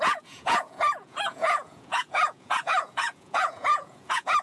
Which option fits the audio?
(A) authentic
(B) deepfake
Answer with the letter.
B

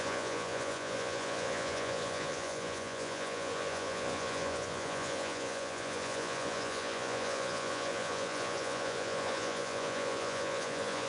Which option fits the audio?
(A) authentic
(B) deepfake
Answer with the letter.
B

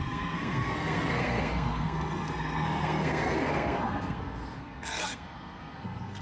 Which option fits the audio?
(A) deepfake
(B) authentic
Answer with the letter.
A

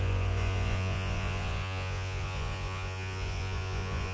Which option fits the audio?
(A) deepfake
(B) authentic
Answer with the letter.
A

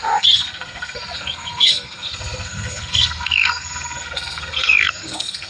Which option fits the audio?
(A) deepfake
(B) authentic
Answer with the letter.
A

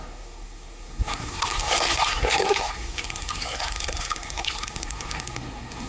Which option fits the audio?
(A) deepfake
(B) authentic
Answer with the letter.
A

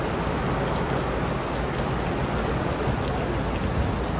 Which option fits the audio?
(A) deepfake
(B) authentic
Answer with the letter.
B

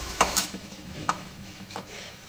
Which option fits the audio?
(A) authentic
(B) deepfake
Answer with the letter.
B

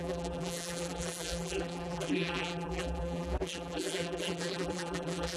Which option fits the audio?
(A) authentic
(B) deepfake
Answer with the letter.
B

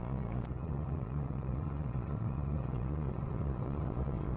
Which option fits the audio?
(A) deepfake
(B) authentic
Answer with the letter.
A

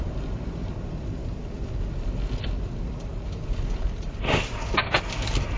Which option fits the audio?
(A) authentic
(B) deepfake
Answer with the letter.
B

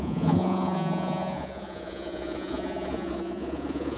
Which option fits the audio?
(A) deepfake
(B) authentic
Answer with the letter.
A